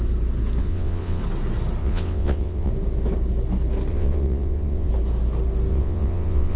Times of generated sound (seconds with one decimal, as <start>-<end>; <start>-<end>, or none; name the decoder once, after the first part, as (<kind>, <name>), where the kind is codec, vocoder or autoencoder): 0.6-1.2 (vocoder, WaveNeXt); 1.8-2.7; 3.9-4.9; 5.7-6.6